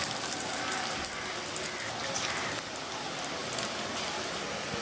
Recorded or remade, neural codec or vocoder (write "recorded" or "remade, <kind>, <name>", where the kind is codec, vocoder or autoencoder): recorded